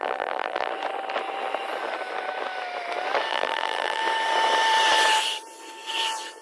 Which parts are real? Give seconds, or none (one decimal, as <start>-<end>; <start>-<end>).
0.7-3.3; 4.0-6.4